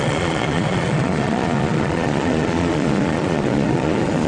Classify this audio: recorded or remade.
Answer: remade